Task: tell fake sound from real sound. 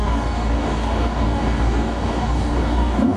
fake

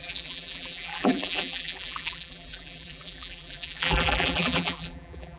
fake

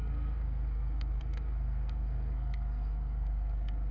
fake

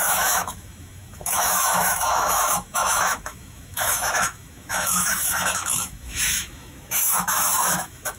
fake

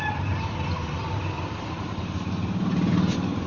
fake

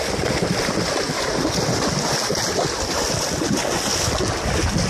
real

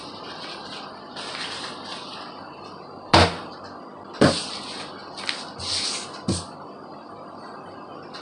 real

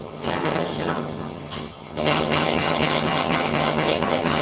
fake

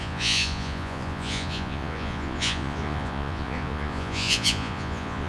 fake